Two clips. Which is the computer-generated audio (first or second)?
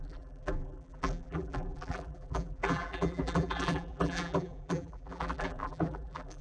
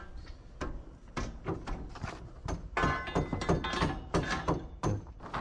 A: first